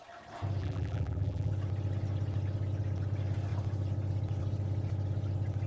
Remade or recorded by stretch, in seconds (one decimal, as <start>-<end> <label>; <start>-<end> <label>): 0.0-0.6 recorded; 0.6-1.5 remade; 1.5-5.7 recorded